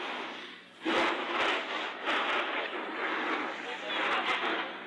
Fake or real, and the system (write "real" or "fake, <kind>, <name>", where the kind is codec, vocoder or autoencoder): real